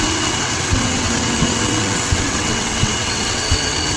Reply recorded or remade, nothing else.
remade